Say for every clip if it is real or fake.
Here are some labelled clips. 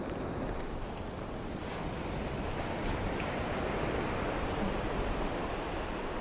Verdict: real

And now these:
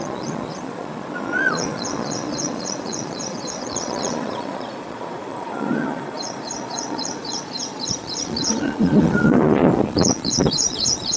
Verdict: fake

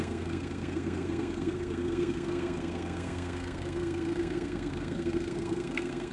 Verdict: fake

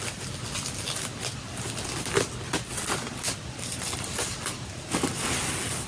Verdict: real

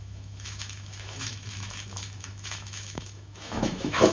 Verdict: fake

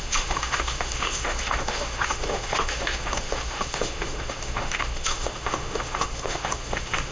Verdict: fake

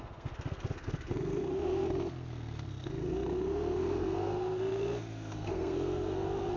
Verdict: fake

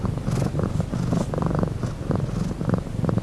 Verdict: real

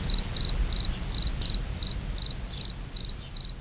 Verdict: real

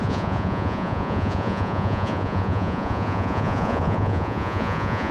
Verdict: fake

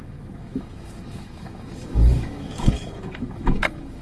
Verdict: fake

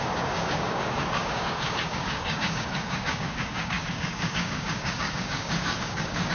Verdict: fake